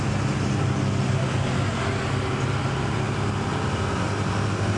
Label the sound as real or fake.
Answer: real